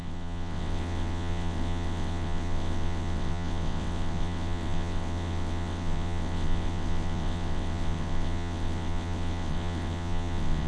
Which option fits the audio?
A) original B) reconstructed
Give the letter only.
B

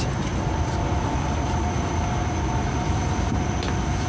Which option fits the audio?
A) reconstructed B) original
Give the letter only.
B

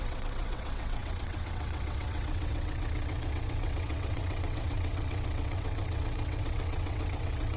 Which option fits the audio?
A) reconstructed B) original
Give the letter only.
A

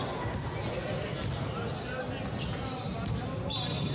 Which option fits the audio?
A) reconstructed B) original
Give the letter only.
B